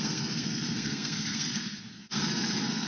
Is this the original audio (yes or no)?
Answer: no